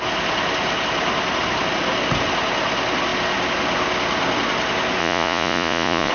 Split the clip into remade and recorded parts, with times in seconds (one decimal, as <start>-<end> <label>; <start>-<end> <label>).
0.0-5.0 recorded; 5.0-6.1 remade